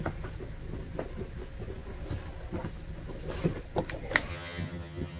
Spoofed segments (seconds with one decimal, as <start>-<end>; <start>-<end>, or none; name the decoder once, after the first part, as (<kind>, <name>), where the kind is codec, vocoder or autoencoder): 4.3-5.2 (vocoder, HiFi-GAN)